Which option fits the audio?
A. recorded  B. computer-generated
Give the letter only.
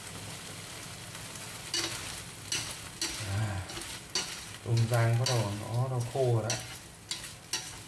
A